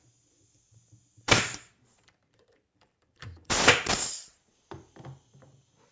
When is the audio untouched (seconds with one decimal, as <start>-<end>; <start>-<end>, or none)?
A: 0.0-1.0; 4.5-5.9